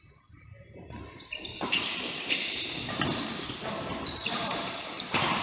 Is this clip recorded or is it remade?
remade